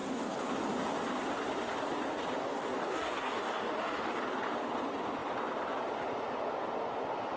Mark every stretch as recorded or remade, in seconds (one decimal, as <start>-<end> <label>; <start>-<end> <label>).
0.0-0.5 remade; 0.5-2.4 recorded; 2.4-4.2 remade; 4.2-7.4 recorded